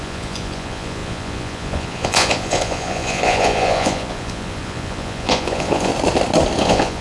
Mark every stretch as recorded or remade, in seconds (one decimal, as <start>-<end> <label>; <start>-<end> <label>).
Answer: 0.0-5.9 remade; 5.9-6.6 recorded; 6.6-7.0 remade